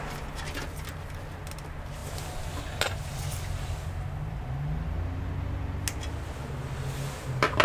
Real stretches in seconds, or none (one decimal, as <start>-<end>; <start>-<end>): 0.0-7.6